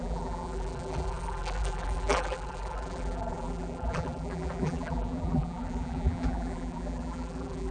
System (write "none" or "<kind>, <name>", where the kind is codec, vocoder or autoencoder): vocoder, BigVGAN v2